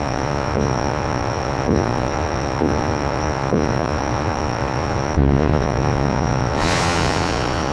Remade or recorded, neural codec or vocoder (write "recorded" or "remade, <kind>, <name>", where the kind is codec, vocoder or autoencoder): remade, vocoder, Vocos